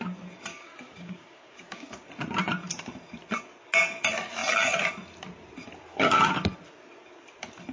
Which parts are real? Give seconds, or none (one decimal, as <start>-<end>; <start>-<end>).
0.0-0.5; 2.1-7.7